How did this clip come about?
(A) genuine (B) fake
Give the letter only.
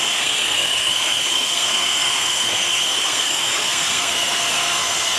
B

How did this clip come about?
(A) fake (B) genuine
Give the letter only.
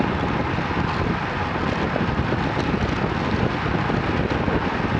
B